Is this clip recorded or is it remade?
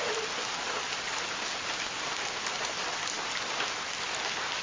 recorded